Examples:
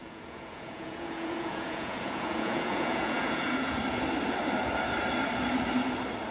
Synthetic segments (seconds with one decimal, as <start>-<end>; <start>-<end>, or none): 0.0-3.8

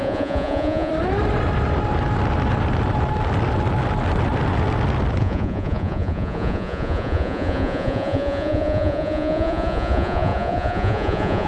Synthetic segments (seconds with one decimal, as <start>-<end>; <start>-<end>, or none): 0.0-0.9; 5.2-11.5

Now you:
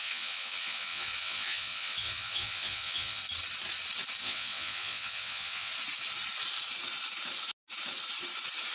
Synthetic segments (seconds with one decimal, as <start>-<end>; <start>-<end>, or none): 0.0-3.2; 4.2-5.7

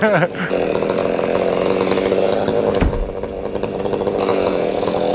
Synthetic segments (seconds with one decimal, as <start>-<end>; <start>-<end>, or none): 4.3-5.1

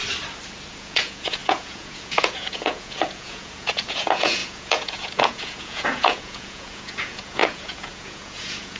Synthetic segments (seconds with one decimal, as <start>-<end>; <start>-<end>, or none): 0.7-8.8

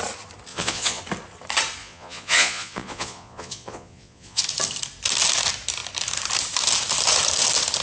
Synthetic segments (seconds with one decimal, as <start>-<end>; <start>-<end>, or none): 0.5-1.0; 1.8-4.4

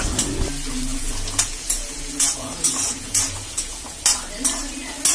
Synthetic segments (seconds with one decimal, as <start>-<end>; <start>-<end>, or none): 0.9-4.0